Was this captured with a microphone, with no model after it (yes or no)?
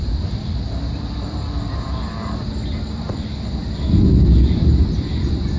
no